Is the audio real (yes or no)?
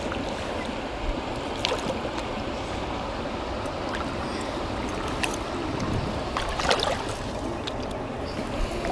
yes